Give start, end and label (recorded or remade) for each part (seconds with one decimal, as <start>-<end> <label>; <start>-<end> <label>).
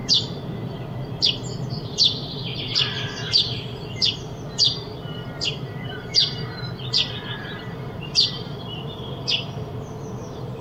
0.0-1.7 recorded; 1.7-10.6 remade